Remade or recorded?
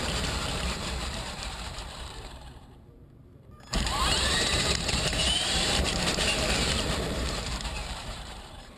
remade